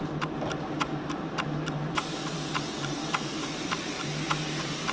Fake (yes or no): yes